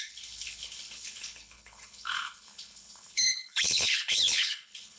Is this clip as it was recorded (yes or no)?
no